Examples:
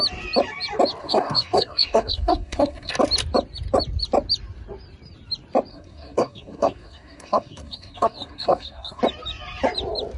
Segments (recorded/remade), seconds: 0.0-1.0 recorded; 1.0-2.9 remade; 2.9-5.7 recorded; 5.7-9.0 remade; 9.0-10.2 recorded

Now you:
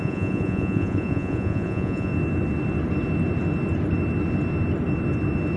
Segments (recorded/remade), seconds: 0.0-2.1 remade; 2.1-5.6 recorded

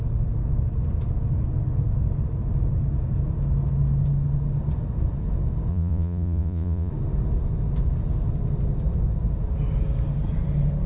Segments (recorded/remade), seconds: 0.0-5.7 recorded; 5.7-6.9 remade; 6.9-10.9 recorded